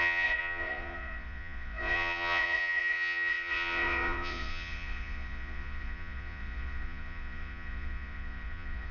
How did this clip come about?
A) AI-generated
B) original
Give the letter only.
A